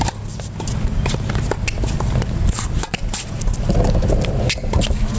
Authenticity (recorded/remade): recorded